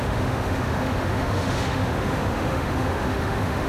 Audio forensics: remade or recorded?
remade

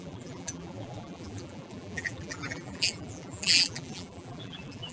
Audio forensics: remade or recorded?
remade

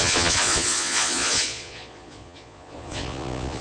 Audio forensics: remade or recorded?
remade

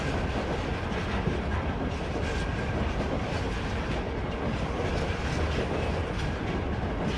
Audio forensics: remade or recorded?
recorded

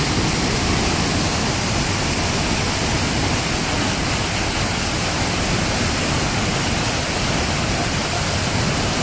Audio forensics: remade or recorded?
recorded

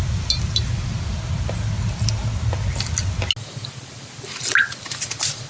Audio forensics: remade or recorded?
recorded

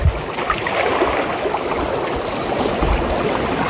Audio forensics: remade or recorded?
recorded